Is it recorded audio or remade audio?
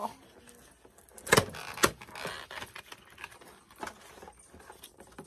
recorded